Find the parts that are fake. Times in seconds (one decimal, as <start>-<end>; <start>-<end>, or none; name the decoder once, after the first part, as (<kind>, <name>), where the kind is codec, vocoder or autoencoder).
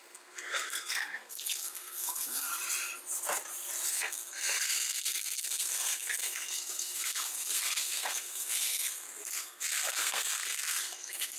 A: 0.0-2.5 (codec, SNAC); 3.9-11.4